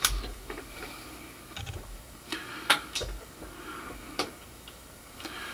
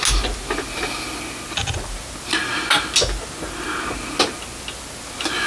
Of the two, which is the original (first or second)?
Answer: second